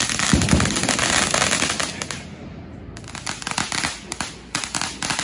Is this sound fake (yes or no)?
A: no